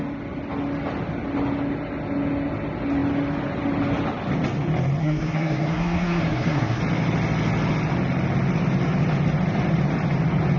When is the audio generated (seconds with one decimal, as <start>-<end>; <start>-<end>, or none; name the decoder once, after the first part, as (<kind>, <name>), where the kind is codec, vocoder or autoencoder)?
5.0-6.8 (codec, SNAC)